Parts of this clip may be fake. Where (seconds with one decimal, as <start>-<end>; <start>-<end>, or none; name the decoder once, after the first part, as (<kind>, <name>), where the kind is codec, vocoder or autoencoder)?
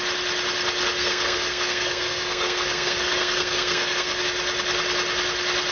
1.0-4.2 (codec, SNAC)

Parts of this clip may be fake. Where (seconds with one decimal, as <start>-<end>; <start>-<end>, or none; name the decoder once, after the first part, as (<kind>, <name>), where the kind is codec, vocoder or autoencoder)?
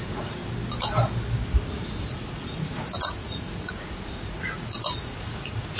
0.0-0.4 (vocoder, Vocos); 1.5-5.8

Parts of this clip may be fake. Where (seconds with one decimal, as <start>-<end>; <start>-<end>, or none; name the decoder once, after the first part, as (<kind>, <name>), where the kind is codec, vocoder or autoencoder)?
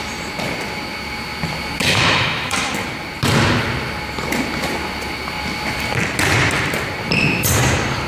1.8-2.7 (autoencoder, DAC-VAE)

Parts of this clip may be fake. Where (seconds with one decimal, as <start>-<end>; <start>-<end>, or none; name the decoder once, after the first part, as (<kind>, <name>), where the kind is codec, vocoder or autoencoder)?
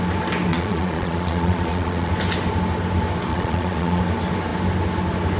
0.5-2.1 (vocoder, Vocos); 3.3-4.0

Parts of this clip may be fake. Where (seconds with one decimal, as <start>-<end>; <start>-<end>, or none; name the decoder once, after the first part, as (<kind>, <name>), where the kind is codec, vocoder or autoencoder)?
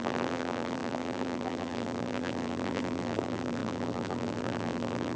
0.0-5.2 (vocoder, BigVGAN v2)